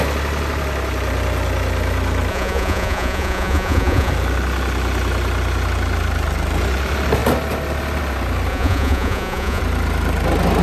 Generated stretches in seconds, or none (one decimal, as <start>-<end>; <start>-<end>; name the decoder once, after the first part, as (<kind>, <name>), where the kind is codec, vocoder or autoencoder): 2.3-4.1 (vocoder, Vocos); 8.5-9.6